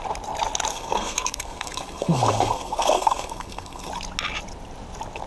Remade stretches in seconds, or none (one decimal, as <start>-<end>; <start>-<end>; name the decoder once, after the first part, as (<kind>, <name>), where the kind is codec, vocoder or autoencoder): 0.7-3.9 (codec, SNAC)